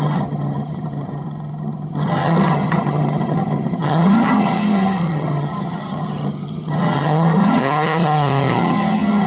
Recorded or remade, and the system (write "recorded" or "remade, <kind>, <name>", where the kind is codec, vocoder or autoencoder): remade, vocoder, HiFi-GAN